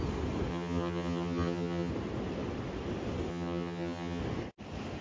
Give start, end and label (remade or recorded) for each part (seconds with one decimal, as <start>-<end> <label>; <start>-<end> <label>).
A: 0.0-0.5 recorded; 0.5-1.9 remade; 1.9-3.3 recorded; 3.3-4.2 remade; 4.2-5.0 recorded